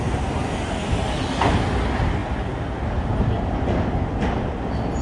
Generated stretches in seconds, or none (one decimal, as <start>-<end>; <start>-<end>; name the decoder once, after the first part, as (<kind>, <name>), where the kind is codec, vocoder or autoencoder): none